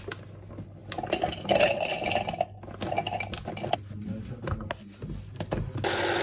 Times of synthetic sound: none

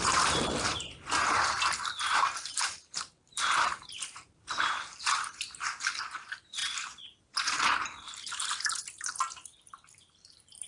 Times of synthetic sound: 0.0-6.6 (vocoder, BigVGAN v2); 7.2-10.7

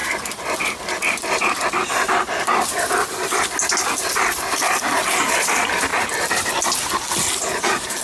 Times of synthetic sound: none

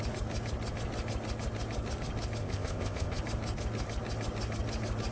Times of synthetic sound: 2.4-3.2 (codec, ZipCodec)

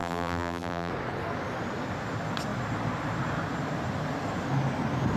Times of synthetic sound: 0.0-0.9 (vocoder, BigVGAN v2)

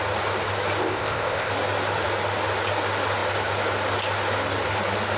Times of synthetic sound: 0.8-1.5 (codec, ZipCodec)

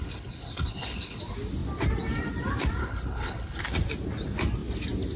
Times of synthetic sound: 0.0-1.2 (codec, HILCodec); 2.8-3.6